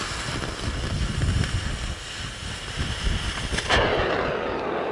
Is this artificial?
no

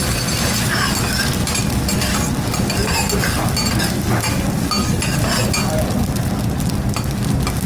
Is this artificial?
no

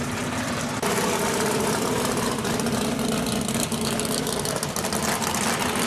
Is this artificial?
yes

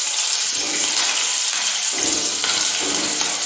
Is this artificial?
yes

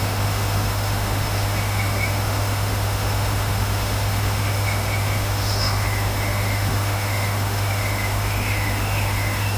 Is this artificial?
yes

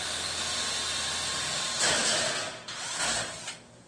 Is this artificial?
no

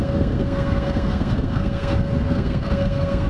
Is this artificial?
yes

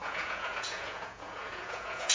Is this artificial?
yes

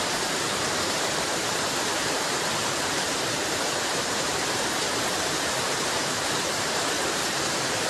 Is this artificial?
yes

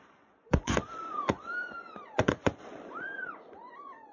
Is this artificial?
yes